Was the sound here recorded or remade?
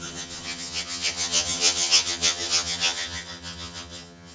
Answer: remade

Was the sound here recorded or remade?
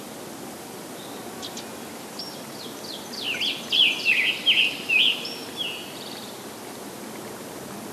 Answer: recorded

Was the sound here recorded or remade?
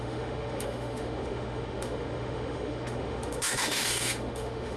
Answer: remade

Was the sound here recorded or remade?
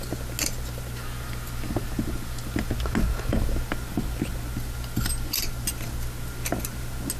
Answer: recorded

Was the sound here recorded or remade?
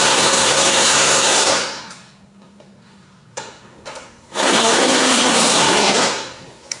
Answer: remade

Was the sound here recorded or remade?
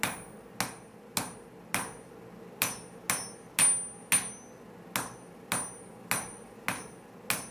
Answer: recorded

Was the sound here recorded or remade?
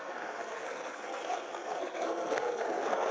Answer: remade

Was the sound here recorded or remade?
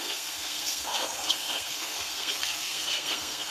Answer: remade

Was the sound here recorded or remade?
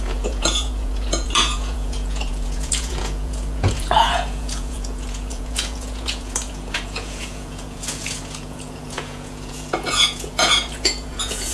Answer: remade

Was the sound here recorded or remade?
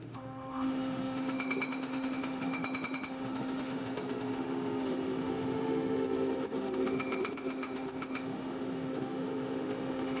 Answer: remade